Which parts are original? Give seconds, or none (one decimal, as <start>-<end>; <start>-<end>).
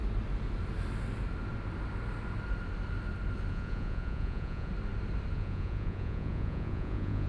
0.0-3.5; 4.7-5.3